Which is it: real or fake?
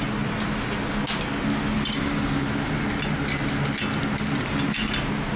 real